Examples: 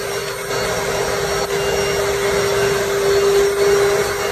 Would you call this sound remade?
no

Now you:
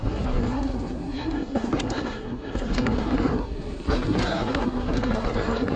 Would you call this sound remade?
yes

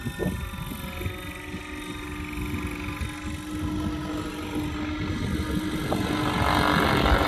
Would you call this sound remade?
no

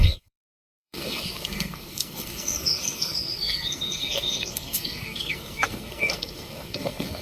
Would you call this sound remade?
yes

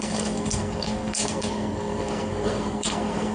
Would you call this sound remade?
yes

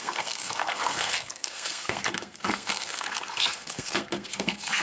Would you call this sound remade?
yes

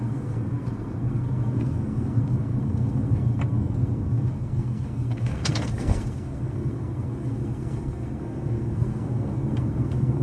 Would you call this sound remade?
yes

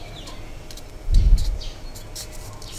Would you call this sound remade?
no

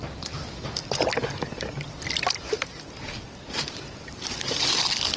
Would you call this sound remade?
no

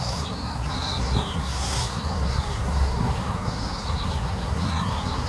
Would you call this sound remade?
yes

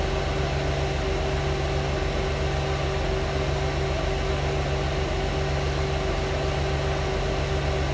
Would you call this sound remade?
no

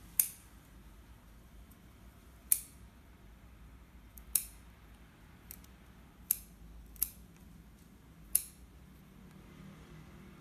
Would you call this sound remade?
no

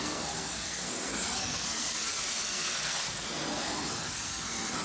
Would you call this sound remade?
yes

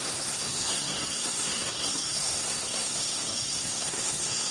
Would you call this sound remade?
yes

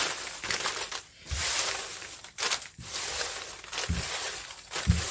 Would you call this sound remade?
no